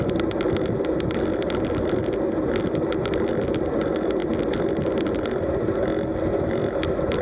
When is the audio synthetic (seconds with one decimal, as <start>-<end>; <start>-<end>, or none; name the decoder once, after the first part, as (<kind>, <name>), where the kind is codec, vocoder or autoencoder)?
none